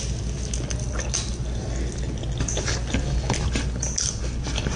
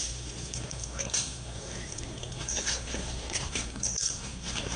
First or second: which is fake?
second